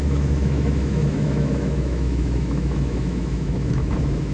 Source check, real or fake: fake